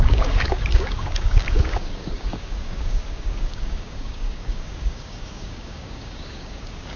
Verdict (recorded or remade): remade